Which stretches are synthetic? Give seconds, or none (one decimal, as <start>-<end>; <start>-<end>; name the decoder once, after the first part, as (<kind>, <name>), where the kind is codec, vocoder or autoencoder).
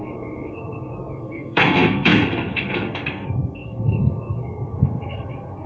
0.0-5.7 (codec, SNAC)